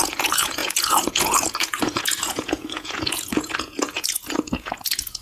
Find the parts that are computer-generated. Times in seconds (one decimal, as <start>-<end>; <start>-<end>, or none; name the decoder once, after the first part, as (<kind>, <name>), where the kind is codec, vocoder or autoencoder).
0.0-5.2 (vocoder, Vocos)